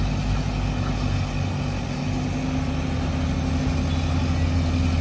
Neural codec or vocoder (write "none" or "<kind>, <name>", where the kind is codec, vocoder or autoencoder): none